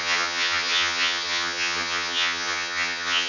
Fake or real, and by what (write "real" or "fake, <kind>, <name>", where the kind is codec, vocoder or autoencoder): fake, vocoder, HiFi-GAN